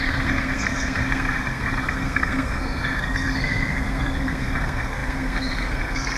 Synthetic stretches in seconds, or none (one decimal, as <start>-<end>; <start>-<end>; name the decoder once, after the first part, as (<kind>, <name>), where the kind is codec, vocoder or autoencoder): 0.0-6.2 (codec, SNAC)